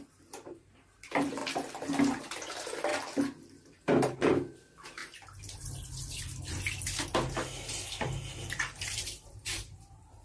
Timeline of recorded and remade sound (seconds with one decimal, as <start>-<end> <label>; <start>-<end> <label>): 0.0-1.4 remade; 1.4-2.2 recorded; 2.2-2.9 remade; 2.9-3.7 recorded; 3.7-5.0 remade; 5.0-7.7 recorded; 7.7-10.2 remade